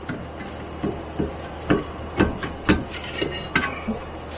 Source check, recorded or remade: recorded